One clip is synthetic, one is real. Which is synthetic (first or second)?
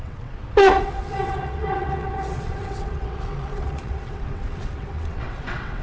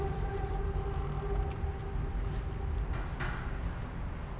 first